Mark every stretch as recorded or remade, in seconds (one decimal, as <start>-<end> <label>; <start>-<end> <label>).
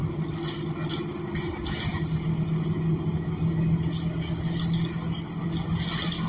0.0-6.3 recorded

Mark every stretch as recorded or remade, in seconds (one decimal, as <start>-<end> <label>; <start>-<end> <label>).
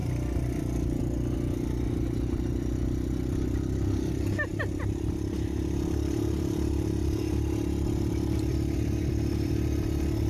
0.0-4.5 recorded; 4.5-9.5 remade; 9.5-10.3 recorded